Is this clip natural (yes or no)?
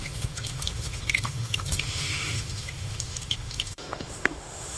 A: no